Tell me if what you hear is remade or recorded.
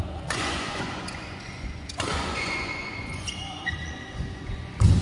remade